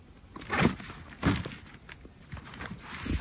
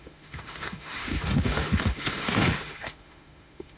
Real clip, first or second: first